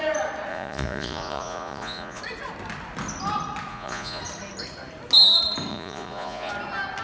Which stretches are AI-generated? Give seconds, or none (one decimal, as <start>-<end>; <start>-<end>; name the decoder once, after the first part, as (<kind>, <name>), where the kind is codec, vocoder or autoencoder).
0.5-2.2 (vocoder, Vocos); 3.7-4.2; 5.7-6.5